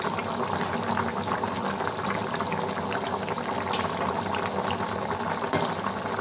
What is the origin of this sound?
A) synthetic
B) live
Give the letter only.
B